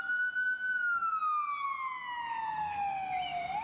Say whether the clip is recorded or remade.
recorded